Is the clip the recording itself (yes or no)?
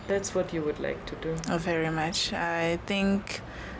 yes